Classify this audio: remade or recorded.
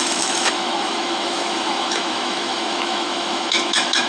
remade